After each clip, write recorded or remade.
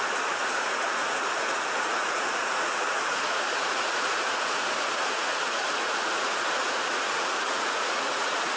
remade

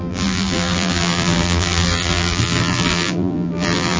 remade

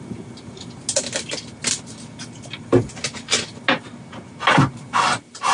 recorded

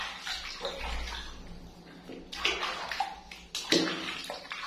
recorded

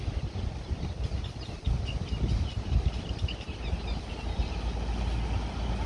recorded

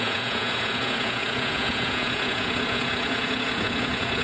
remade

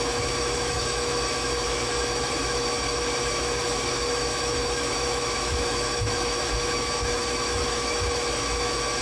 remade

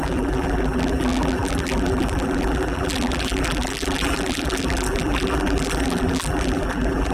remade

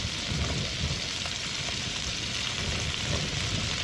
recorded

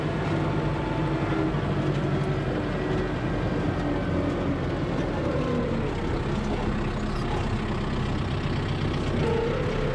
recorded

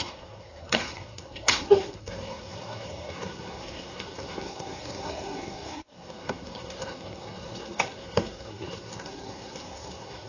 remade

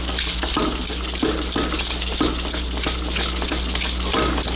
recorded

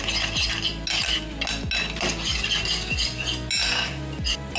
recorded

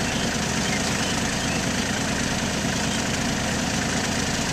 recorded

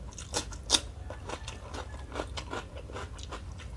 recorded